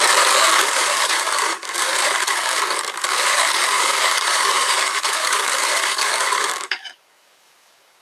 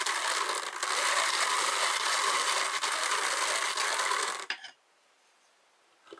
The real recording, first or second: second